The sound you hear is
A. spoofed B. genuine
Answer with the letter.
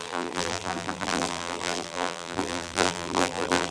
A